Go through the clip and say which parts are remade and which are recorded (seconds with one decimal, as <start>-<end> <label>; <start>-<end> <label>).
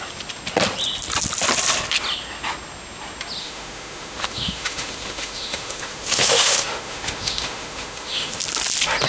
0.0-3.4 recorded; 3.4-8.4 remade; 8.4-9.1 recorded